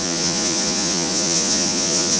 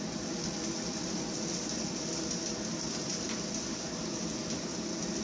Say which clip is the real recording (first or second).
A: second